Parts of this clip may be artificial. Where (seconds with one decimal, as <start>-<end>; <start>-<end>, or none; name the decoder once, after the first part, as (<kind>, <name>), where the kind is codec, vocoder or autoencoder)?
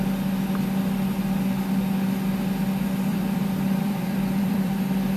3.1-4.8 (vocoder, BigVGAN v2)